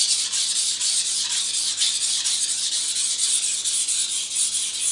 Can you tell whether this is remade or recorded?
recorded